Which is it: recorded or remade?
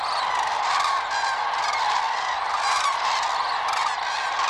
recorded